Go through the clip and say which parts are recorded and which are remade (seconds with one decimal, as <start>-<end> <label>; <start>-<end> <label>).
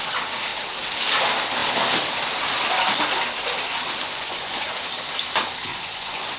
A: 0.0-4.1 recorded; 4.1-4.7 remade; 4.7-5.7 recorded; 5.7-6.4 remade